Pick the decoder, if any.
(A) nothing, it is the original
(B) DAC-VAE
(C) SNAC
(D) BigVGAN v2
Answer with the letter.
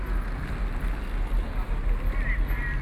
A